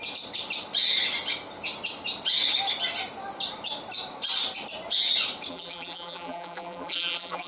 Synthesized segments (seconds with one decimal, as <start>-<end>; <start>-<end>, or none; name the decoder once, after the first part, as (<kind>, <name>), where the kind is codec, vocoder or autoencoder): 5.5-7.5 (vocoder, BigVGAN v2)